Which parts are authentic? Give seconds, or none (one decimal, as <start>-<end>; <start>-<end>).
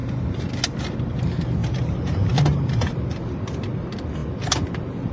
0.0-1.6; 2.9-5.1